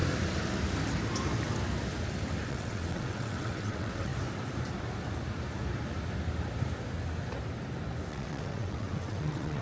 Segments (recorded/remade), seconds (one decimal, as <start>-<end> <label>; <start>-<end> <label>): 0.0-2.5 recorded; 2.5-4.1 remade; 4.1-8.1 recorded; 8.1-9.6 remade